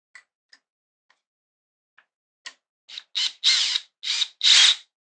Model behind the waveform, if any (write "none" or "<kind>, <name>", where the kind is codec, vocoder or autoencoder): none